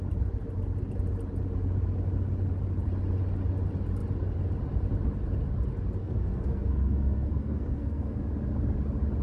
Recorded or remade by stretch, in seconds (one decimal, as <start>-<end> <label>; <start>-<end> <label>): 0.0-6.0 recorded; 6.0-8.2 remade; 8.2-9.2 recorded